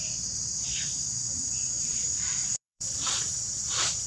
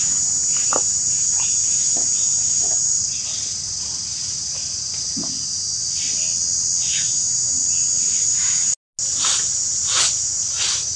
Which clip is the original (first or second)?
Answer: second